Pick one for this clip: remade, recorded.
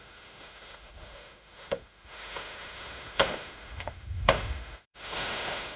remade